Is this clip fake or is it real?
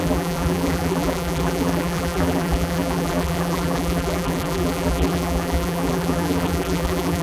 fake